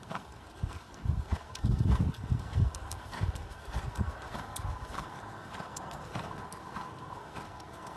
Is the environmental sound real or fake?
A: fake